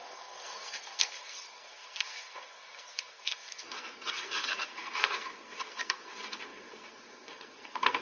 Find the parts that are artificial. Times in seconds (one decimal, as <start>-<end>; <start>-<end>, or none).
0.0-8.0